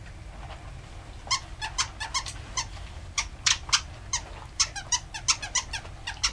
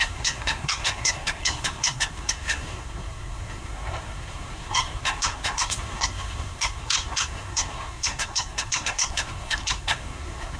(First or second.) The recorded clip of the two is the first